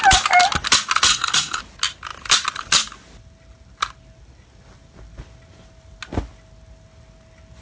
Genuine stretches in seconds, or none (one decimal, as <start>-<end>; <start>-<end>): 0.0-1.1; 1.6-7.6